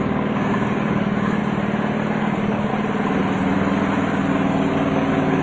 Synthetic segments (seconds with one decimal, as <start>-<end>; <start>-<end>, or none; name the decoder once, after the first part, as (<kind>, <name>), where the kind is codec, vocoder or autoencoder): 0.0-1.4 (codec, DAC); 2.2-2.7; 4.2-5.4